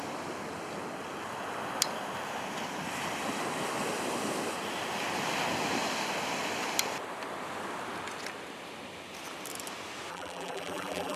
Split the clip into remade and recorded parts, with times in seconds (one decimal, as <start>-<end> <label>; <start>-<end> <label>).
0.0-10.1 recorded; 10.1-11.2 remade